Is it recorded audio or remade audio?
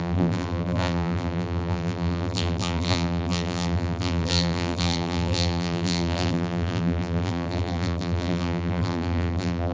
remade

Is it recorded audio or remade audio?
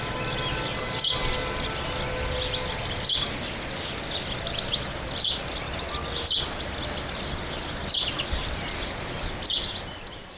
recorded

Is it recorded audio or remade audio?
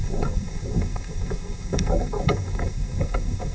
remade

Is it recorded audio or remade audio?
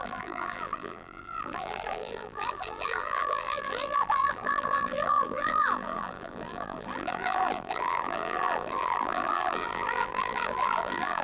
remade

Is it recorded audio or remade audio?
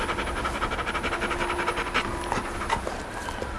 recorded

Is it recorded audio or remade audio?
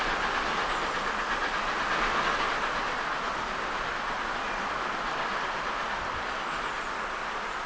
recorded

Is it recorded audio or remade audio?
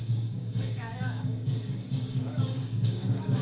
remade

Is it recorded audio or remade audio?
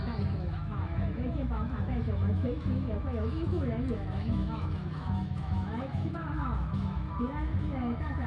remade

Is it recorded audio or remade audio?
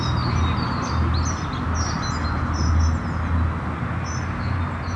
recorded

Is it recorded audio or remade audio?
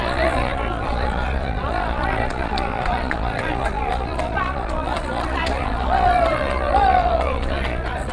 remade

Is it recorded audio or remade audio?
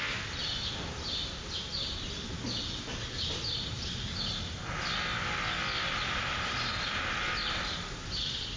recorded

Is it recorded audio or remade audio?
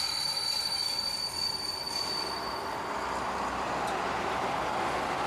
recorded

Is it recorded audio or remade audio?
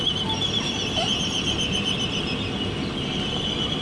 recorded